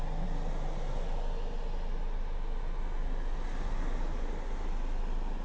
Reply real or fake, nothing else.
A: real